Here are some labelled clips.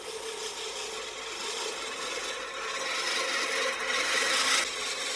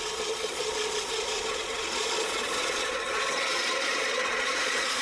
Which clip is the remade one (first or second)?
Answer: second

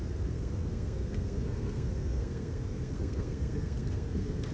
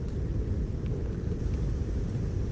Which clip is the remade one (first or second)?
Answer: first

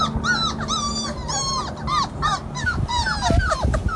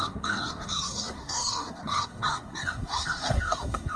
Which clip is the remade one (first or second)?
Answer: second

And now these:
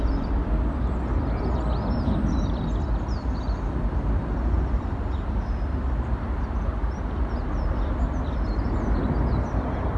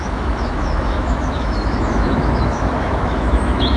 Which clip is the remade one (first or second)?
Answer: second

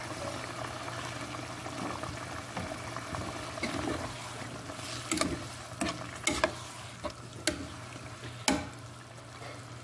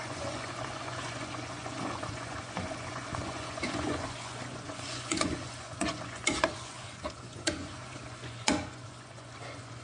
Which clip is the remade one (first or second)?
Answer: second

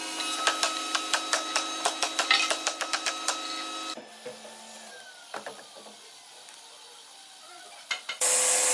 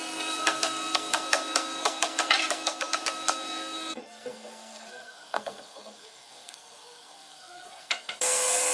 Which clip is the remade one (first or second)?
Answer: second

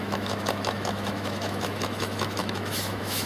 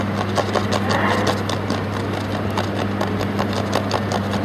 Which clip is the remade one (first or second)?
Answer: first